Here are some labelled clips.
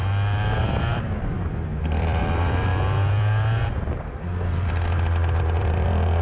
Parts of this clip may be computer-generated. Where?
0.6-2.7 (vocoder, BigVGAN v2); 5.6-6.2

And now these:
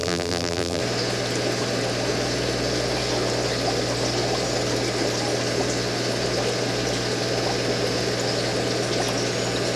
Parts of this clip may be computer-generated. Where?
0.0-0.8 (vocoder, BigVGAN v2)

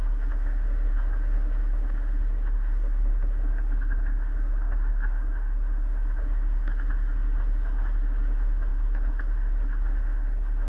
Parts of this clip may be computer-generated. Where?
0.0-10.7 (codec, SNAC)

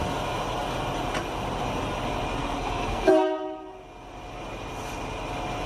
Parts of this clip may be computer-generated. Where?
2.4-3.1 (codec, SNAC)

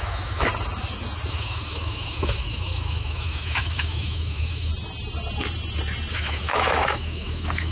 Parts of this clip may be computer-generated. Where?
0.0-0.5 (autoencoder, DAC-VAE); 1.3-4.7; 6.1-7.7

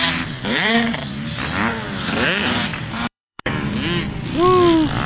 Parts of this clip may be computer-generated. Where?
0.0-1.2 (vocoder, BigVGAN v2); 2.7-3.5

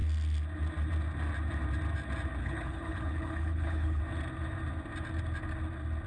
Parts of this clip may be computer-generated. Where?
2.4-4.0 (codec, HILCodec)

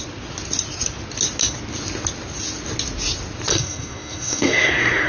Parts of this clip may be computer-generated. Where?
3.5-5.1 (codec, SNAC)